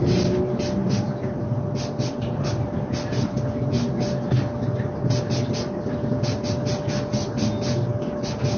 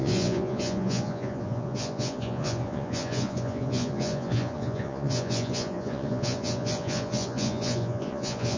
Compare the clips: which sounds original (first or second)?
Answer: first